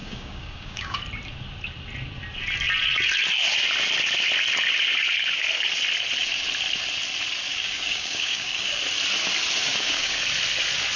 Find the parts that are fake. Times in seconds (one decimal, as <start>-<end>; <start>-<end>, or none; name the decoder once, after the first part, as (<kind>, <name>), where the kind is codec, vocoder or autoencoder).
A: 0.0-1.0 (codec, DAC); 7.5-8.8; 9.7-10.2